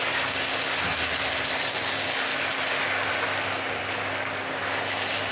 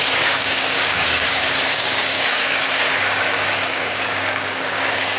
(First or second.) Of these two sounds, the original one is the first